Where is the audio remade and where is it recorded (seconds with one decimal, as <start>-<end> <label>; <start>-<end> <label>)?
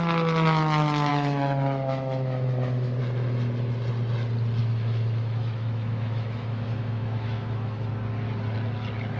0.0-1.1 recorded; 1.1-3.0 remade; 3.0-4.6 recorded; 4.6-7.9 remade; 7.9-9.2 recorded